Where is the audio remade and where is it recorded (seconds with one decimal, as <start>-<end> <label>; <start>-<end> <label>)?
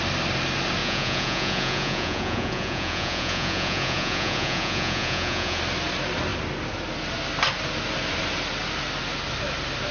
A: 0.0-0.8 recorded; 0.8-5.6 remade; 5.6-9.9 recorded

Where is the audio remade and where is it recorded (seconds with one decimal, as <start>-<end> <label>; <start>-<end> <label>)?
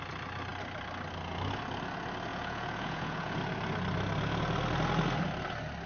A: 0.0-2.3 recorded; 2.3-3.4 remade; 3.4-5.9 recorded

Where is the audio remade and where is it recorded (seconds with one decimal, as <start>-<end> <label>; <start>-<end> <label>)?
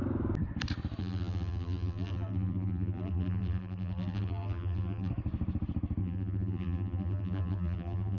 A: 0.0-1.0 recorded; 1.0-5.1 remade; 5.1-6.0 recorded; 6.0-8.2 remade